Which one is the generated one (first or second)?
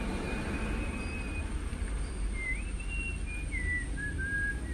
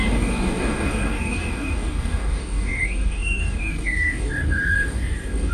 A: second